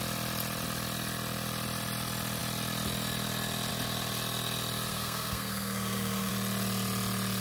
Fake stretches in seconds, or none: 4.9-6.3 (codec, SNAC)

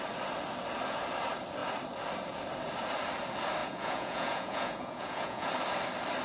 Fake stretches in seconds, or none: 3.6-5.5 (vocoder, Vocos)

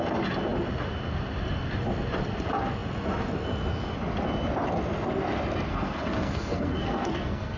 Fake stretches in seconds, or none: 5.7-7.6 (codec, SNAC)

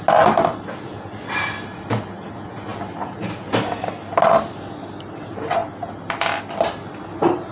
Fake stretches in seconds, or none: none

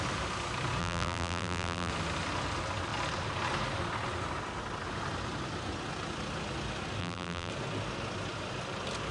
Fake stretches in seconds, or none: 0.8-1.9 (vocoder, BigVGAN v2); 7.0-7.5

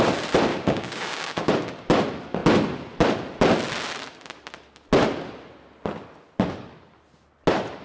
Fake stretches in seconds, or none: 0.5-1.5 (codec, DAC)

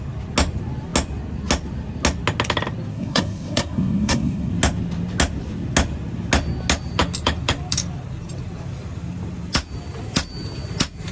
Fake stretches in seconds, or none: 2.9-4.5 (codec, SNAC)